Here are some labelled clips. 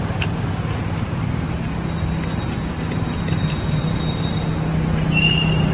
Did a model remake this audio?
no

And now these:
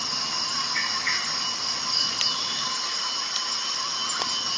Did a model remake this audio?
no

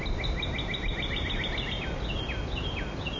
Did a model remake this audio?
no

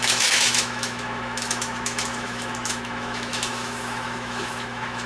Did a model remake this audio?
yes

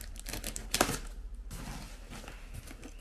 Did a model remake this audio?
no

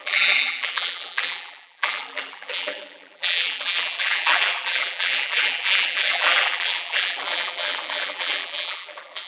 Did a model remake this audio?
yes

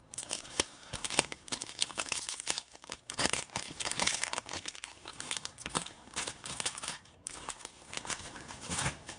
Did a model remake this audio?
yes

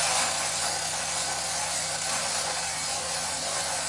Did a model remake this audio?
yes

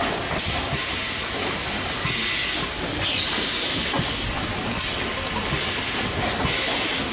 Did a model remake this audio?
no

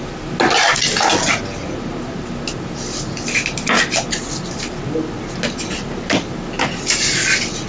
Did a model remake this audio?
no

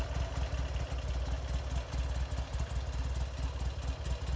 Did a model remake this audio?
no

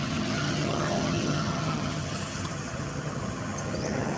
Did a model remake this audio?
yes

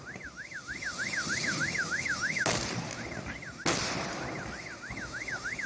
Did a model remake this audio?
no